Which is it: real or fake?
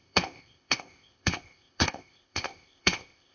fake